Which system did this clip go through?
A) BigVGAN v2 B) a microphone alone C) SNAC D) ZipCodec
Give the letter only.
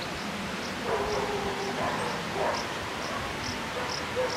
B